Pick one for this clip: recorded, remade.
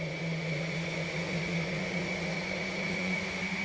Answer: remade